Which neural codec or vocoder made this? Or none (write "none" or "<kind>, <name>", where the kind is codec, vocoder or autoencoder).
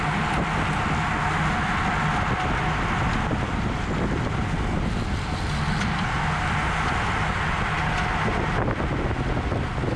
none